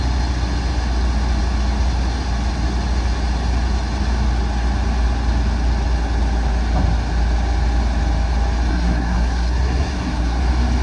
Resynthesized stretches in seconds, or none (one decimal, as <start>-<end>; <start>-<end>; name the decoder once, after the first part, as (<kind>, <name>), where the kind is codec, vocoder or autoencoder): 8.7-10.4 (codec, SNAC)